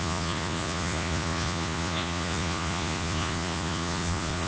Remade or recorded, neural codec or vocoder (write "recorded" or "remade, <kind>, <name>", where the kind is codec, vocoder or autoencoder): remade, vocoder, Vocos